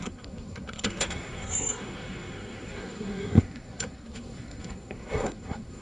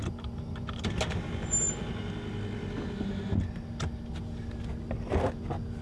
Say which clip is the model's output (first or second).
first